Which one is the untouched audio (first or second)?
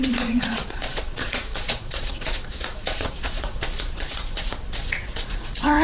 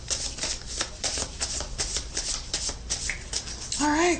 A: second